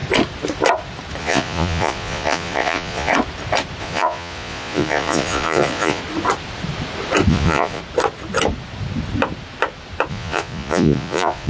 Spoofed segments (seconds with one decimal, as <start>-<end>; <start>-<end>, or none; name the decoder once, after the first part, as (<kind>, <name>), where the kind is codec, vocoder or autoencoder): 1.2-3.1 (vocoder, Vocos); 3.8-6.0; 7.3-7.8; 10.1-11.5